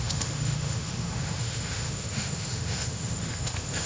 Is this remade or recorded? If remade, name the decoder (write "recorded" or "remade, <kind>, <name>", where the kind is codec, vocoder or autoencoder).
remade, autoencoder, DAC-VAE